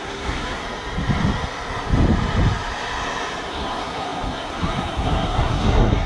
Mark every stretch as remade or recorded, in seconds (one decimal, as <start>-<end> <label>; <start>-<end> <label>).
0.0-0.6 remade; 0.6-3.5 recorded; 3.5-6.1 remade